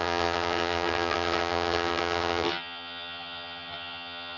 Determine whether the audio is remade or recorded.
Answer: remade